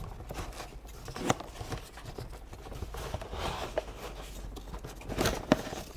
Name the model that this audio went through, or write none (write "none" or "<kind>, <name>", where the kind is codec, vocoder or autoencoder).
none